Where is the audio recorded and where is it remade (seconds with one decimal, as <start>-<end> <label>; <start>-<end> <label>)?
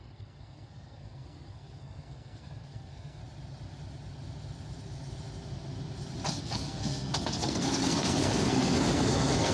0.0-3.2 remade; 3.2-6.4 recorded; 6.4-9.5 remade